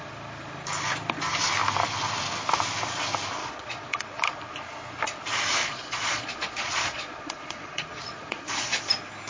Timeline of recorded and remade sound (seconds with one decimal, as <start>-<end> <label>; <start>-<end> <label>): 0.0-3.4 recorded; 3.4-4.2 remade; 4.2-5.6 recorded; 5.6-8.8 remade; 8.8-9.3 recorded